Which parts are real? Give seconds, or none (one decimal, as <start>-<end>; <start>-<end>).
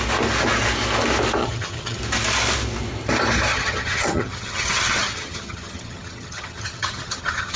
0.0-1.4; 2.0-3.5